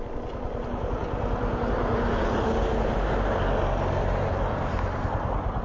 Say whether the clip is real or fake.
real